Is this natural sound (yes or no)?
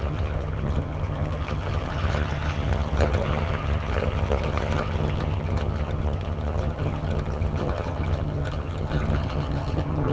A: no